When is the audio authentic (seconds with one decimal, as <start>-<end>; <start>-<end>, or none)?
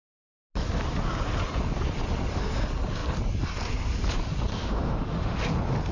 0.0-4.5; 5.4-5.9